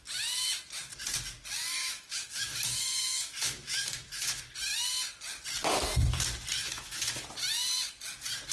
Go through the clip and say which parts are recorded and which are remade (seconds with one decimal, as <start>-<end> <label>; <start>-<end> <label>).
0.0-1.7 recorded; 1.7-4.4 remade; 4.4-6.6 recorded; 6.6-7.2 remade; 7.2-8.5 recorded